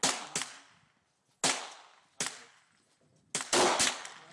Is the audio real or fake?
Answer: real